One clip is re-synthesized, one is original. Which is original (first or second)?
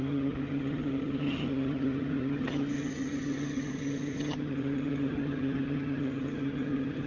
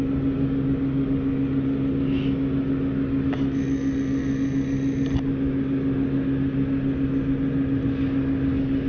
second